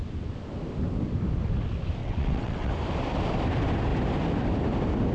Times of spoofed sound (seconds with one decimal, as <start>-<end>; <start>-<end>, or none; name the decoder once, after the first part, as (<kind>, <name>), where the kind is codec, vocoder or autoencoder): 2.0-2.7 (vocoder, WaveNeXt)